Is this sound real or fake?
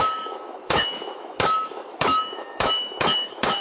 fake